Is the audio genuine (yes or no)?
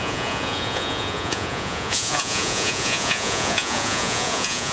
no